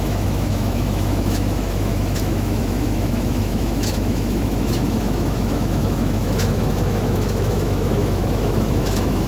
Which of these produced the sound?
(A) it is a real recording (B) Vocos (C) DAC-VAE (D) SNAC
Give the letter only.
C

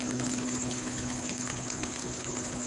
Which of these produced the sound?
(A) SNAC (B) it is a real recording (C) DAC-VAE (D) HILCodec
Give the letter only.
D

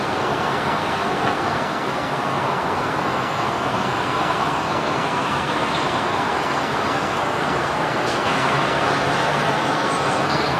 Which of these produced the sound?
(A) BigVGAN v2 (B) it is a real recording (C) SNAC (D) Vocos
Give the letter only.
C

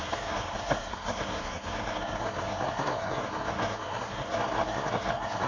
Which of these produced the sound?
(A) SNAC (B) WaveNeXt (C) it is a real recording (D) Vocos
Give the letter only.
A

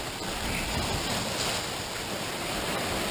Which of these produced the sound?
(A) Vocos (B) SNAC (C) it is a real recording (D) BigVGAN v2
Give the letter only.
C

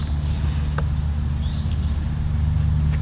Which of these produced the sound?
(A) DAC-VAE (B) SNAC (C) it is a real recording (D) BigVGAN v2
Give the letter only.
C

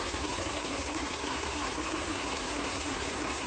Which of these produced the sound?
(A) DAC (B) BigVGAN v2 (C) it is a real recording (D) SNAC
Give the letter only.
D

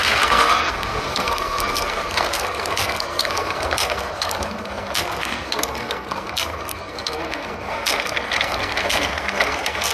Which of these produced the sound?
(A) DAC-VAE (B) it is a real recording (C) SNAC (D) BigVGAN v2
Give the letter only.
C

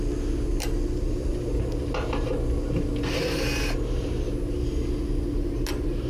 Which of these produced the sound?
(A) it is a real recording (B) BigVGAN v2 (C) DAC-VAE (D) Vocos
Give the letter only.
A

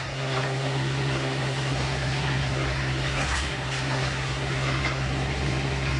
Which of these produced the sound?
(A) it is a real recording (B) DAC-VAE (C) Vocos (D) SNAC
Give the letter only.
D